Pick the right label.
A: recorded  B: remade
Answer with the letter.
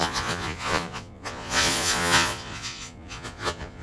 B